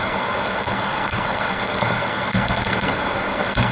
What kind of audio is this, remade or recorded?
remade